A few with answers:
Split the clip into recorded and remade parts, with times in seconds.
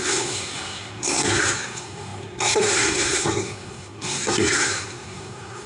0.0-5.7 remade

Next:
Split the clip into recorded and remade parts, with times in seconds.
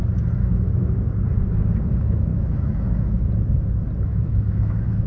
0.0-0.4 recorded; 0.4-1.0 remade; 1.0-2.3 recorded; 2.3-3.2 remade; 3.2-4.1 recorded; 4.1-5.1 remade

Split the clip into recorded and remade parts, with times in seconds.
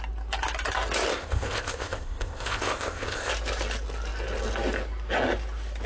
0.0-1.1 recorded; 1.1-3.3 remade; 3.3-5.9 recorded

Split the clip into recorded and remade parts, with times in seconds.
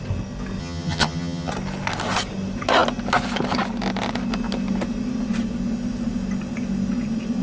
0.0-0.6 recorded; 0.6-1.5 remade; 1.5-7.4 recorded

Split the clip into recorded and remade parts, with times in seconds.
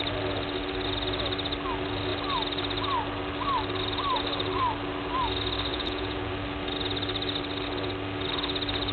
0.0-5.7 recorded; 5.7-6.3 remade; 6.3-8.9 recorded